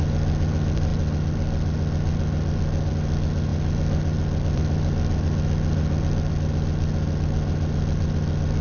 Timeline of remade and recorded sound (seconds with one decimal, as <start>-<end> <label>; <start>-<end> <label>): 0.0-8.6 recorded